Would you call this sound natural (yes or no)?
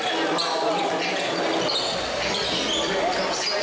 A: yes